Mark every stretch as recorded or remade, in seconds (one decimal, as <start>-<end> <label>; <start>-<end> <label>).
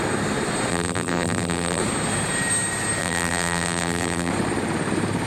0.0-0.7 recorded; 0.7-1.8 remade; 1.8-3.0 recorded; 3.0-4.3 remade; 4.3-5.3 recorded